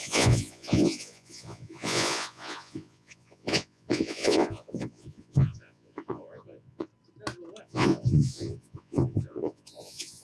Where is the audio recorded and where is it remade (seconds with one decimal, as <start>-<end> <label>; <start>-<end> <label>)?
0.0-6.9 remade; 6.9-7.6 recorded; 7.6-10.2 remade

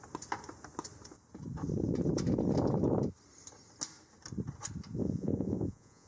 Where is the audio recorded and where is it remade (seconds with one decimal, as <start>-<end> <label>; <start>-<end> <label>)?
0.0-5.0 recorded; 5.0-6.1 remade

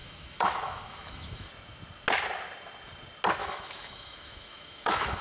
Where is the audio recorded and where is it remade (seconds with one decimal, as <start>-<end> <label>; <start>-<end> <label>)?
0.0-1.5 remade; 1.5-3.4 recorded; 3.4-5.2 remade

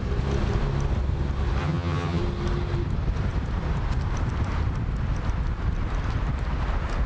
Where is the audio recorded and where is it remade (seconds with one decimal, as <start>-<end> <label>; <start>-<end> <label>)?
0.0-1.6 recorded; 1.6-2.2 remade; 2.2-7.1 recorded

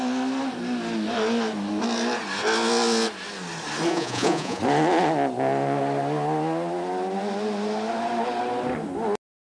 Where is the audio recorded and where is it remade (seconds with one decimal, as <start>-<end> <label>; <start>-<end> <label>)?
0.0-3.9 recorded; 3.9-4.6 remade; 4.6-9.6 recorded

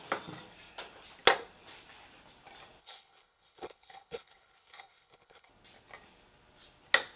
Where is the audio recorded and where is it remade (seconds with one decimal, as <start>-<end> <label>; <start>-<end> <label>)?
0.0-2.8 recorded; 2.8-5.5 remade; 5.5-7.2 recorded